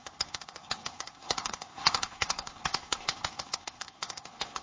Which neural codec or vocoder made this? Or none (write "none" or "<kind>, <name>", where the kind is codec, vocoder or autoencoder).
codec, SNAC